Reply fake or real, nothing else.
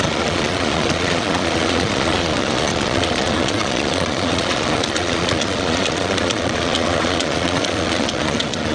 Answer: fake